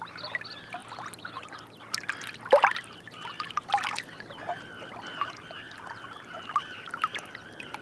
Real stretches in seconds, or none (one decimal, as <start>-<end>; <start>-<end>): 0.0-7.8